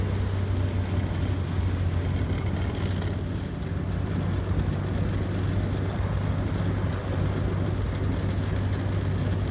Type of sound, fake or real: real